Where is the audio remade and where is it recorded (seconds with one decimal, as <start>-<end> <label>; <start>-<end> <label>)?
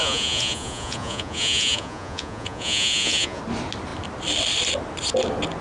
0.0-3.4 remade; 3.4-5.6 recorded